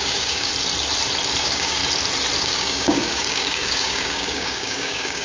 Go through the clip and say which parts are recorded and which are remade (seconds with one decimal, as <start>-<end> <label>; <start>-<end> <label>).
0.0-0.5 remade; 0.5-1.4 recorded; 1.4-1.8 remade; 1.8-2.4 recorded; 2.4-5.2 remade

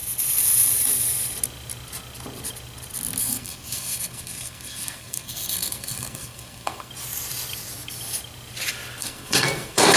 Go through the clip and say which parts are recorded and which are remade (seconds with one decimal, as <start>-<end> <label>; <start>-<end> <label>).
0.0-3.2 recorded; 3.2-6.9 remade; 6.9-9.0 recorded; 9.0-10.0 remade